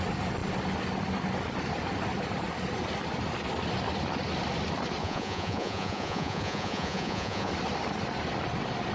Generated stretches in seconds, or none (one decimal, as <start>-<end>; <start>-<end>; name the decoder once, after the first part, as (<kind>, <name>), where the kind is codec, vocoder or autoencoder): 5.0-7.5 (vocoder, Vocos)